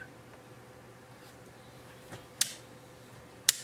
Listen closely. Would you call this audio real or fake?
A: real